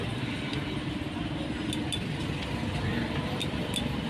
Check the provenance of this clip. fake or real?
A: real